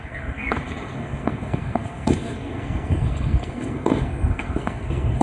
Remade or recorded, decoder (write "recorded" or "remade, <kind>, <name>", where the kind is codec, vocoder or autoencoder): remade, codec, SNAC